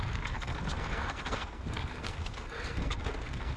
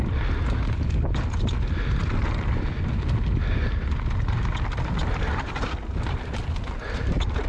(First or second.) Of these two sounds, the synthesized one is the first